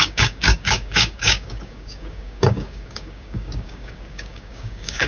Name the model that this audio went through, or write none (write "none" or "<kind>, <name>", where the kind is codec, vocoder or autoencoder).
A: codec, DAC